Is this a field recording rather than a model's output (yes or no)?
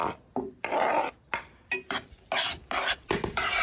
yes